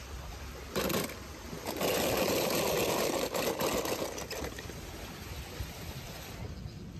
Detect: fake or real real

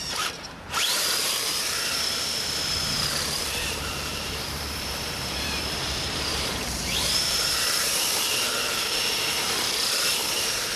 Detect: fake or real fake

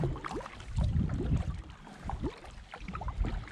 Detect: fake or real fake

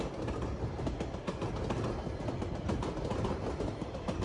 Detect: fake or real real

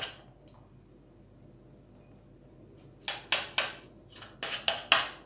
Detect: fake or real real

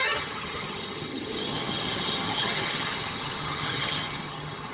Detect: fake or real fake